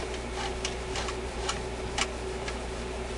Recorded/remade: recorded